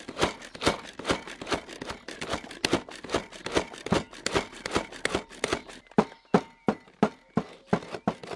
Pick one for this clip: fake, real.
real